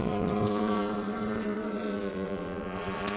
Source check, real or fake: fake